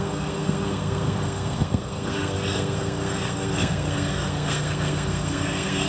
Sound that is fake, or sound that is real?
fake